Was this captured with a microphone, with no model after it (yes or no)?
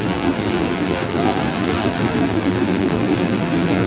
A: no